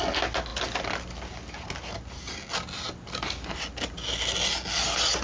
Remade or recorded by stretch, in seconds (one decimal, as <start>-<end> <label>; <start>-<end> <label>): 0.0-5.2 recorded